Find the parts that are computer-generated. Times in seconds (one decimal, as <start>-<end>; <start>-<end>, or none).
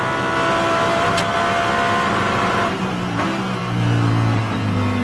none